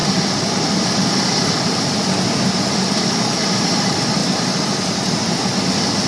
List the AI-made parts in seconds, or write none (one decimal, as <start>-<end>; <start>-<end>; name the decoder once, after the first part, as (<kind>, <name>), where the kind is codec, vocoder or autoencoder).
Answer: none